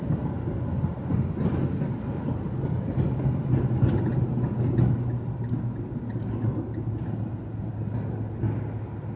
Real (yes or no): yes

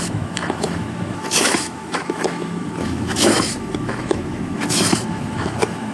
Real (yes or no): no